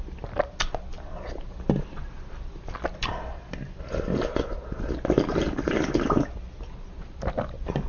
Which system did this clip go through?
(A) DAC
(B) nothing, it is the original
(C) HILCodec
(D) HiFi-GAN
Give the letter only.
B